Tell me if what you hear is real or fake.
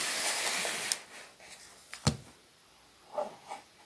real